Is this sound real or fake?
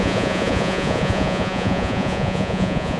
fake